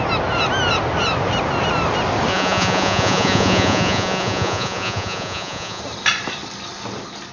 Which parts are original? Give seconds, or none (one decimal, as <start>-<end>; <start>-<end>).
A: 0.0-2.3; 5.8-7.3